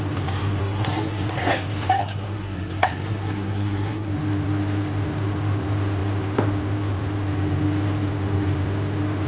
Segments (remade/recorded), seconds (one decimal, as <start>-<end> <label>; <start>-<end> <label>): 0.0-0.6 recorded; 0.6-1.5 remade; 1.5-2.0 recorded; 2.0-4.1 remade; 4.1-9.3 recorded